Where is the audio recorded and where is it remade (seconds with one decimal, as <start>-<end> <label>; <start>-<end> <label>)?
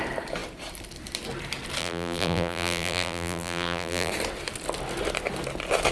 0.0-1.8 recorded; 1.8-4.1 remade; 4.1-5.9 recorded